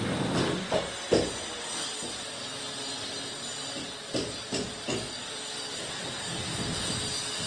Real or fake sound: real